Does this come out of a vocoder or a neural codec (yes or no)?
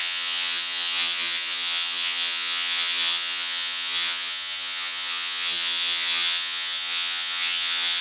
yes